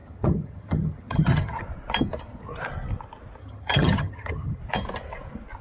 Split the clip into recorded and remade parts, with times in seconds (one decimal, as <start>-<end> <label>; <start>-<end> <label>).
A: 0.0-1.6 remade; 1.6-3.4 recorded; 3.4-4.6 remade; 4.6-5.6 recorded